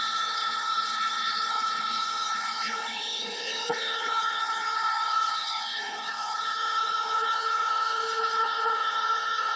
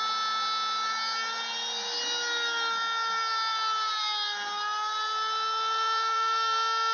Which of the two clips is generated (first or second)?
first